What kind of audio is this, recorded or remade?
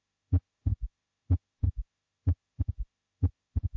remade